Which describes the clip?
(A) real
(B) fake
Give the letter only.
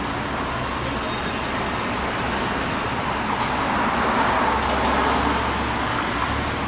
A